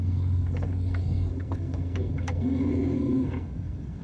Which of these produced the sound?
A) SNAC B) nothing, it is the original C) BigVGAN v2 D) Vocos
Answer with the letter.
A